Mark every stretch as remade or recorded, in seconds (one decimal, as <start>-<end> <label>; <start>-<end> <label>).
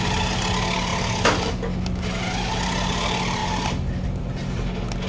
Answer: 0.0-5.1 recorded